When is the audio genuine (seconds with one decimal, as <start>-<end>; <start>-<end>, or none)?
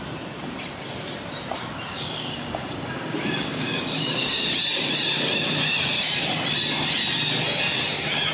0.0-1.9; 4.3-8.3